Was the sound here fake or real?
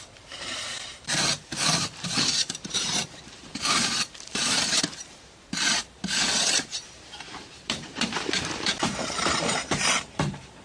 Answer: fake